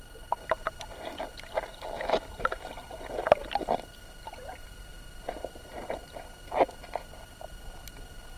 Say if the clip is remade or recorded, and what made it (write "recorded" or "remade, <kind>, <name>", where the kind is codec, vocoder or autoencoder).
recorded